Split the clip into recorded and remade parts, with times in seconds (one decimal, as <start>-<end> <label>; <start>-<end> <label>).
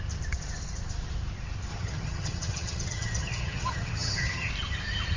0.0-1.7 recorded; 1.7-4.5 remade; 4.5-5.2 recorded